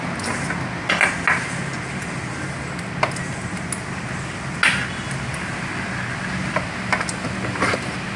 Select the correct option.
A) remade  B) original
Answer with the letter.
B